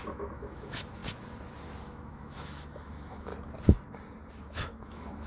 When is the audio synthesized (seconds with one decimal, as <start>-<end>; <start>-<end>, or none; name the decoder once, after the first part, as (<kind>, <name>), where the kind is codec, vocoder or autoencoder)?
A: 0.0-1.0 (autoencoder, DAC-VAE); 1.8-3.3; 4.3-5.3